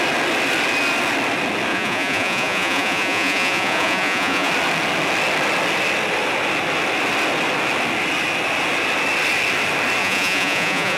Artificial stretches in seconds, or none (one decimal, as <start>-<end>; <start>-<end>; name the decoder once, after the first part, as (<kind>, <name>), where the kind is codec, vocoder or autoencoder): 1.7-4.5 (vocoder, Vocos); 10.0-11.0